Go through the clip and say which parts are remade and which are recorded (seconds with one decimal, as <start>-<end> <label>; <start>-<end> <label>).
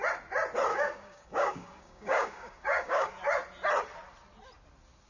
0.0-0.7 recorded; 0.7-3.1 remade; 3.1-5.1 recorded